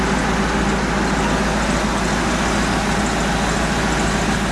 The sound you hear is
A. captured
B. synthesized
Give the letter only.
A